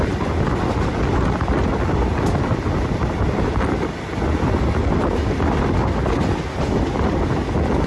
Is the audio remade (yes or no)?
no